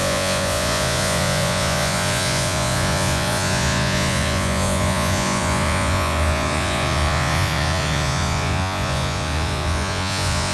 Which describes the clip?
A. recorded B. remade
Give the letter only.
B